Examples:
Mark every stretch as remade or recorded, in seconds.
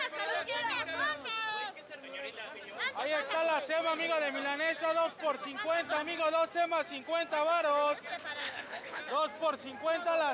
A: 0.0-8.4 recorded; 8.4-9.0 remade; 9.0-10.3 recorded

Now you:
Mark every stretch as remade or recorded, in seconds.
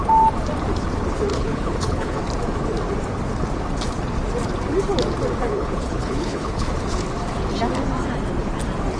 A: 0.0-1.3 recorded; 1.3-2.2 remade; 2.2-5.5 recorded; 5.5-6.7 remade; 6.7-9.0 recorded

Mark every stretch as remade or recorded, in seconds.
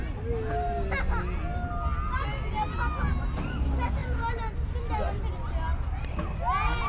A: 0.0-6.9 recorded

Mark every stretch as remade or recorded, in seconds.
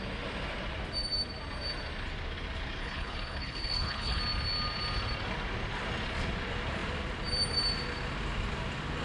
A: 0.0-2.8 recorded; 2.8-4.2 remade; 4.2-9.0 recorded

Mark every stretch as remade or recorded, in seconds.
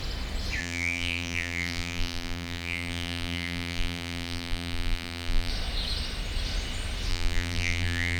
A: 0.0-0.6 recorded; 0.6-5.5 remade; 5.5-7.1 recorded; 7.1-8.2 remade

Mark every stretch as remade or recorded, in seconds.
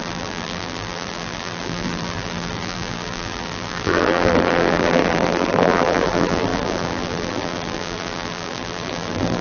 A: 0.0-9.4 remade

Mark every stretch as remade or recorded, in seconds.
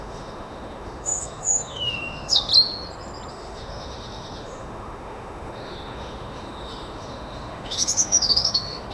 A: 0.0-2.5 remade; 2.5-3.3 recorded; 3.3-8.9 remade